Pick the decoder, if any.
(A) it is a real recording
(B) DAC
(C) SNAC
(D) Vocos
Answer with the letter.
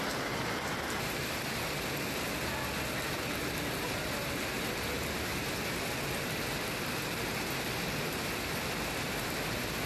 A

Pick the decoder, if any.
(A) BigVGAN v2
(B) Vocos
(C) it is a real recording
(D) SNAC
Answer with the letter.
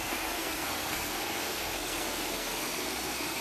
D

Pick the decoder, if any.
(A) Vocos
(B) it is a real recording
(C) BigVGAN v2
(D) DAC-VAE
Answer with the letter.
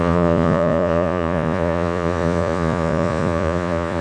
A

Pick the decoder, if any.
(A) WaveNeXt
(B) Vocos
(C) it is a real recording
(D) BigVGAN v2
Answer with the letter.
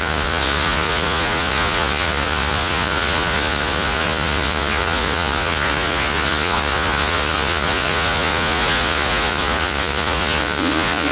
B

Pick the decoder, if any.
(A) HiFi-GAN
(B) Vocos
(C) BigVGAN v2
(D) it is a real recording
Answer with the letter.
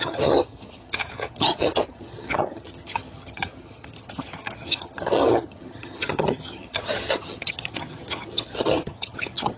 A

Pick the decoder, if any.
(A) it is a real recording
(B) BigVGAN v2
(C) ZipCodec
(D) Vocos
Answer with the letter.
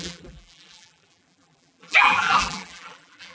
B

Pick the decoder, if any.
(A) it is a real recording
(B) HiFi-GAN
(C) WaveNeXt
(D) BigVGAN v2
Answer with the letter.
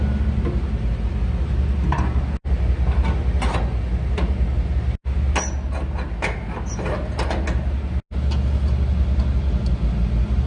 A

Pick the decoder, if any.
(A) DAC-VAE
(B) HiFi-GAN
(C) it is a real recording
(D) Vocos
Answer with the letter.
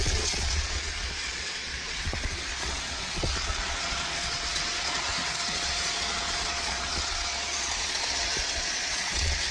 D